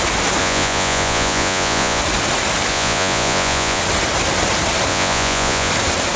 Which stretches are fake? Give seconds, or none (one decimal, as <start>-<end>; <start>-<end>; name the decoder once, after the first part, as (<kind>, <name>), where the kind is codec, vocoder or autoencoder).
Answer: 0.4-2.0 (vocoder, Vocos); 2.7-3.8; 4.9-5.7